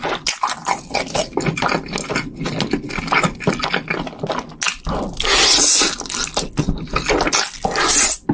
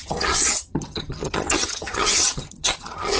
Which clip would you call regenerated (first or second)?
second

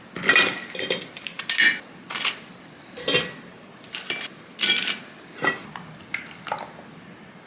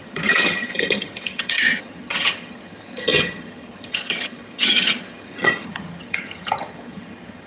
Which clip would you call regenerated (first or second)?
second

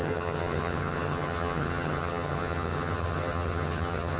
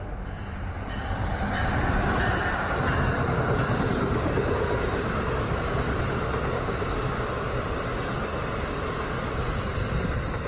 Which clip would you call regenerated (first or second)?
first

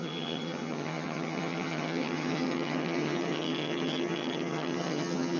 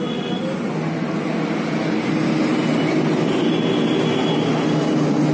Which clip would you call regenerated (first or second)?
first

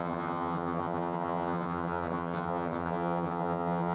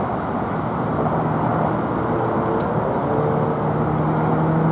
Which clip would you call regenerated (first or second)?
first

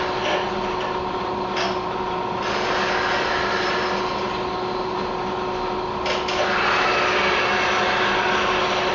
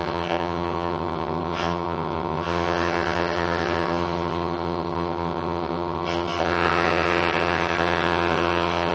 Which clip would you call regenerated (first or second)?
second